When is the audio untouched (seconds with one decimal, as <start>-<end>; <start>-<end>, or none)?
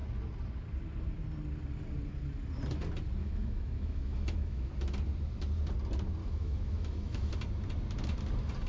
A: 0.0-3.2; 4.7-6.2; 7.3-8.7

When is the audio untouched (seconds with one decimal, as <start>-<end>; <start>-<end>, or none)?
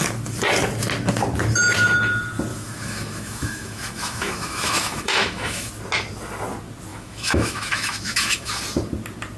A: 0.0-2.5; 5.7-6.9; 8.6-9.4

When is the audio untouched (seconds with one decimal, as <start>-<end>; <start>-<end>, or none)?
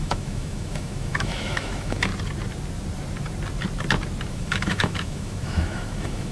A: 2.1-4.3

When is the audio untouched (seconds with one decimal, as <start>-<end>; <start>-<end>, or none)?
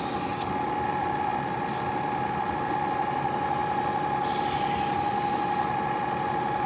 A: 0.0-6.7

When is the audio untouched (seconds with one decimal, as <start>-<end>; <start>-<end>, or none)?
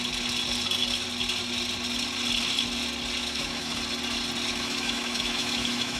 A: 0.0-3.2; 3.7-4.5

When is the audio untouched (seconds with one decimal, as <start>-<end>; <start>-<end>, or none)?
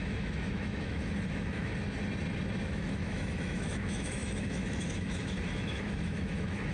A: 1.7-2.6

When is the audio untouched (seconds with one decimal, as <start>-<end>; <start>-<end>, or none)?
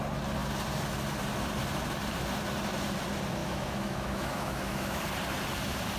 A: 0.0-3.4; 5.0-6.0